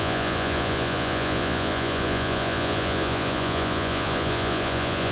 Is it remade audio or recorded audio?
remade